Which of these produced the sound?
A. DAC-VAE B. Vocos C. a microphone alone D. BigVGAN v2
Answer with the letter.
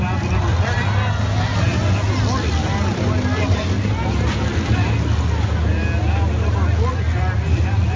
C